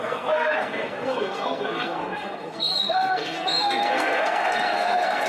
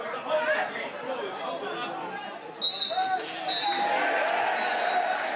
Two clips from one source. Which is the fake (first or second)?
first